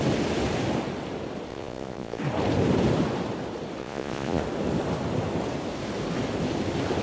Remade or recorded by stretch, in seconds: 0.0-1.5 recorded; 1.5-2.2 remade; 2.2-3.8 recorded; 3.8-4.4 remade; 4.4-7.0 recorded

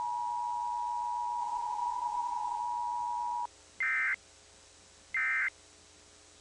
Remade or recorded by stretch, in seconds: 0.0-1.4 recorded; 1.4-2.6 remade; 2.6-6.4 recorded

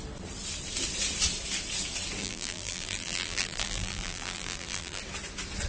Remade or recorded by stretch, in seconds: 0.0-2.2 recorded; 2.2-5.0 remade; 5.0-5.7 recorded

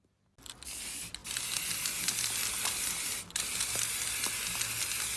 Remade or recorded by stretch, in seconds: 0.0-5.2 recorded

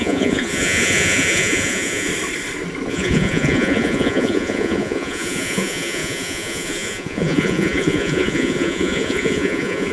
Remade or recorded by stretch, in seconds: 0.0-2.1 remade; 2.1-2.9 recorded; 2.9-9.9 remade

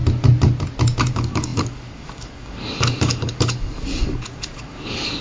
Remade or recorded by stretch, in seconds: 0.0-1.1 recorded; 1.1-5.2 remade

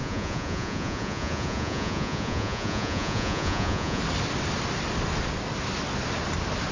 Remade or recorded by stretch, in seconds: 0.0-4.0 remade; 4.0-6.7 recorded